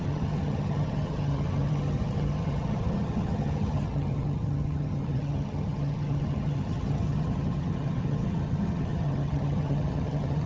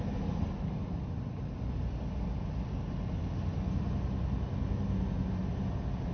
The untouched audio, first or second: second